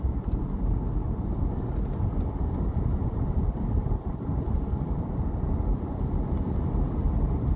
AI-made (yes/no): no